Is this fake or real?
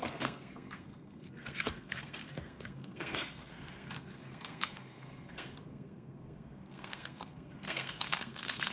fake